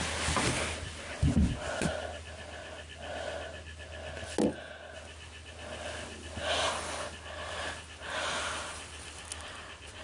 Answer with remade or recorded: recorded